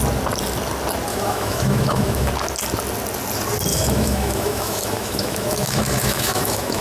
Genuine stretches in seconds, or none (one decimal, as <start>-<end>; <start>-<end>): 0.0-1.1; 2.3-3.7